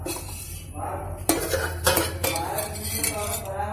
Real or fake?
real